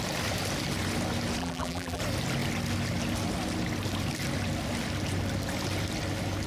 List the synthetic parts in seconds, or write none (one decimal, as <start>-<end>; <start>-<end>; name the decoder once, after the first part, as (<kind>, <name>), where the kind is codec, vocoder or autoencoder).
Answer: 1.4-2.0 (vocoder, BigVGAN v2)